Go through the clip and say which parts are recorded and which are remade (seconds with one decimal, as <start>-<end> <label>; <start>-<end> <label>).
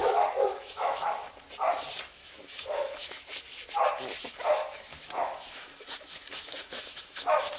0.0-1.3 remade; 1.3-2.1 recorded; 2.1-3.2 remade; 3.2-4.5 recorded; 4.5-7.6 remade